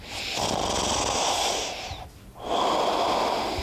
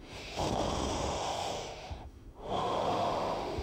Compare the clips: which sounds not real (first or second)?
second